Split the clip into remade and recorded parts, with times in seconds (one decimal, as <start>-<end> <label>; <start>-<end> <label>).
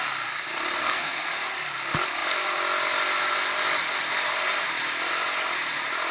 0.0-0.8 recorded; 0.8-1.3 remade; 1.3-6.1 recorded